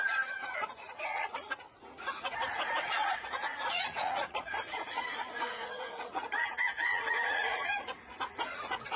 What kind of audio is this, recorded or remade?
remade